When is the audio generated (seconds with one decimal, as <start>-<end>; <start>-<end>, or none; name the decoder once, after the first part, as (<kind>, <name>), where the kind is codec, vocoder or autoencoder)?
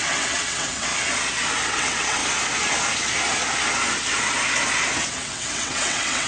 0.0-0.9 (vocoder, WaveNeXt); 1.7-2.2; 5.1-6.3